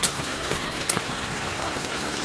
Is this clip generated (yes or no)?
yes